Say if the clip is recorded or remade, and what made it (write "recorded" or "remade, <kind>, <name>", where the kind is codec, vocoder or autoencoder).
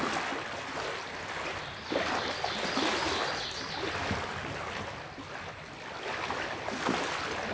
recorded